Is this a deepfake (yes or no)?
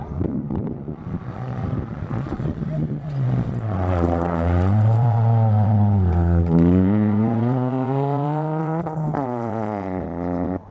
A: yes